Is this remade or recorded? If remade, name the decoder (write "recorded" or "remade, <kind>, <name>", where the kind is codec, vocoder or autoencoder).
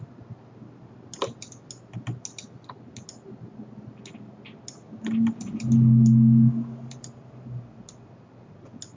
recorded